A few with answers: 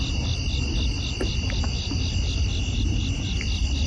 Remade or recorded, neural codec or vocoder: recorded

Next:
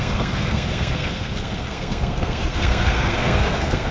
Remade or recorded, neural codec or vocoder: remade, codec, SNAC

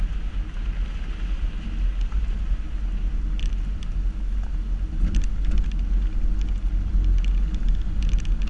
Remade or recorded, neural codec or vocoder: recorded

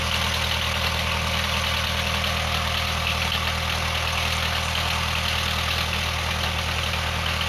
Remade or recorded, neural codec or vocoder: recorded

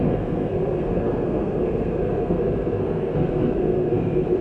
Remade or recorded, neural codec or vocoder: remade, codec, SNAC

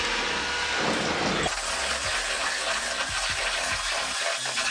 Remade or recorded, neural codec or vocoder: recorded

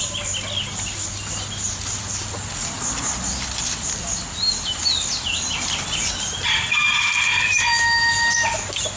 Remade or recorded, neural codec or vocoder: recorded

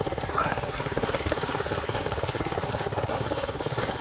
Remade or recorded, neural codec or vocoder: remade, codec, SNAC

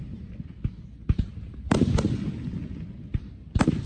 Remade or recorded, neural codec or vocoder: recorded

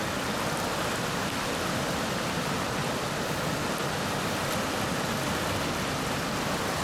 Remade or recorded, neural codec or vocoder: recorded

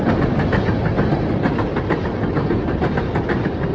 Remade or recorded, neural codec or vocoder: recorded